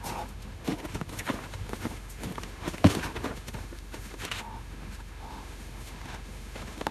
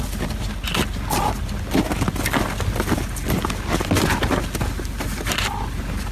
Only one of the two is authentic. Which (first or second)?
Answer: second